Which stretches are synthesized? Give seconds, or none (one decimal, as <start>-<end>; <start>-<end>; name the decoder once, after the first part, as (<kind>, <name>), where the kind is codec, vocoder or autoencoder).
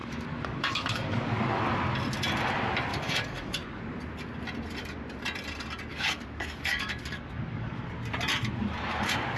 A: 0.0-1.6 (codec, DAC); 2.9-3.8; 5.9-7.8